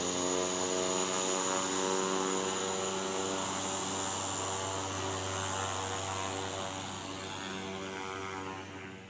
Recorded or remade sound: recorded